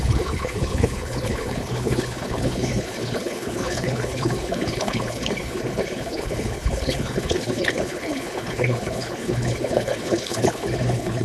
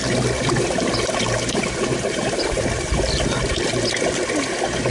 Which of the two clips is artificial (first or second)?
first